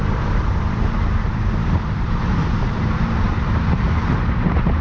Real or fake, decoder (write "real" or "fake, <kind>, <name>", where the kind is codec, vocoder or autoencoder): fake, vocoder, BigVGAN v2